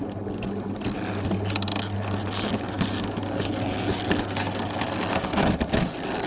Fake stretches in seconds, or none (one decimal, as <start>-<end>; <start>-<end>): none